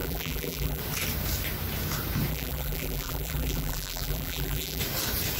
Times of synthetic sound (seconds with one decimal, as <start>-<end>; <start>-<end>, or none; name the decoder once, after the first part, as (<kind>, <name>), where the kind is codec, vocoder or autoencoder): 0.0-0.8 (vocoder, BigVGAN v2); 2.3-4.8